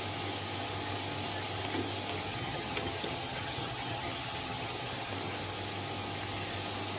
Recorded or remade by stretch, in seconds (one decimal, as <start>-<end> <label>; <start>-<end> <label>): 0.0-2.3 recorded; 2.3-5.1 remade; 5.1-7.0 recorded